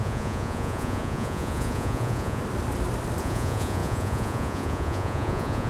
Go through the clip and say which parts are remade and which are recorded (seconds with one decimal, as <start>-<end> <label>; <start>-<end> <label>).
0.0-2.4 remade; 2.4-3.2 recorded; 3.2-5.7 remade